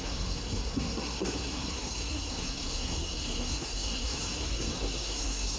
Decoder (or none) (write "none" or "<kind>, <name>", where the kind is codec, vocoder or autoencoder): codec, SNAC